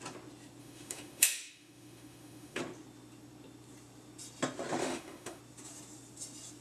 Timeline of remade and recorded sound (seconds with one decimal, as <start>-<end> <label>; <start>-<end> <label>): 0.0-0.6 recorded; 0.6-2.6 remade; 2.6-4.8 recorded; 4.8-5.4 remade; 5.4-6.6 recorded